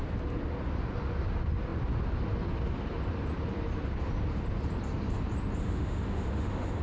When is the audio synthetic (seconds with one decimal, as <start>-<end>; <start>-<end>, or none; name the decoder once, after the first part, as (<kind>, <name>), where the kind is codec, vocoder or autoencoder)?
5.6-6.8 (autoencoder, DAC-VAE)